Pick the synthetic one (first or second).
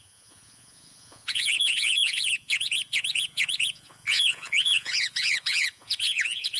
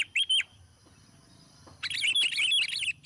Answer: first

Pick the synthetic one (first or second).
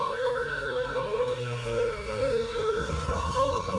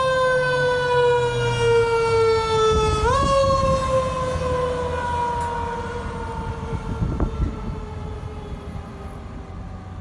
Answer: first